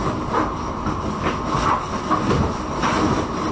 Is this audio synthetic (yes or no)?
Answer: no